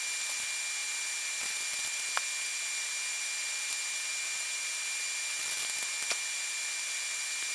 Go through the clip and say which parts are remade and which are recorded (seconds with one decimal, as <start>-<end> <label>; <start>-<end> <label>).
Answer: 0.0-7.5 recorded